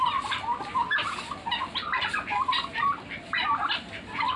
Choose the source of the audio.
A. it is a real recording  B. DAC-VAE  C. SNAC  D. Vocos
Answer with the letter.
A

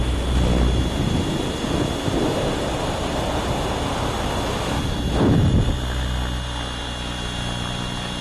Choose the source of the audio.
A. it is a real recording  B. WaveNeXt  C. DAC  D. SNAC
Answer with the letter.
A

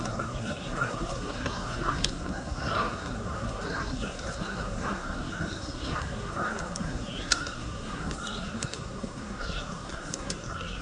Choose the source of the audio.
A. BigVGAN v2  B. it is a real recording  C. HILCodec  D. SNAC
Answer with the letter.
D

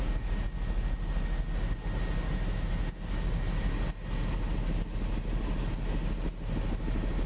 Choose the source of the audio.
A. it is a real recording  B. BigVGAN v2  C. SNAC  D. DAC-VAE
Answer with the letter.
A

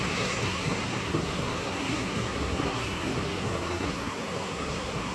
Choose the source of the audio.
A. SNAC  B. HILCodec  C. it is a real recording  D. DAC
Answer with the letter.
A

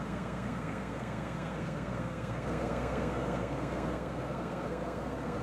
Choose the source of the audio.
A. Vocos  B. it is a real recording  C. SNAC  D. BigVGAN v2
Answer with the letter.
C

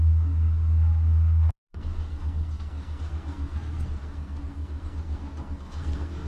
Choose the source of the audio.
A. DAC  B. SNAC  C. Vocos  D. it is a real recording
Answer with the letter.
B